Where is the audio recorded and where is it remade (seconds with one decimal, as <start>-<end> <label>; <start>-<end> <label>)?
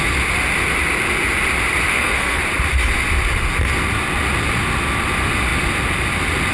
0.0-1.9 recorded; 1.9-2.4 remade; 2.4-6.5 recorded